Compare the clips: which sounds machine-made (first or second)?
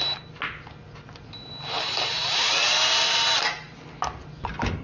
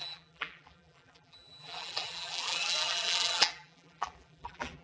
second